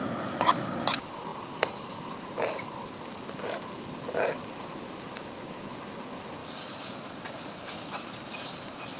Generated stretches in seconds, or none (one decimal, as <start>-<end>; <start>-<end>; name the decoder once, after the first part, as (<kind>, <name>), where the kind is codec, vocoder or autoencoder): none